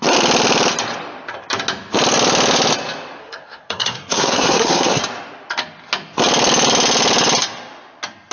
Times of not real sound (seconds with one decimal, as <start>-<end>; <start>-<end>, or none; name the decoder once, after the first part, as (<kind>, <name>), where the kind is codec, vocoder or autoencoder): 3.2-5.0 (codec, SNAC)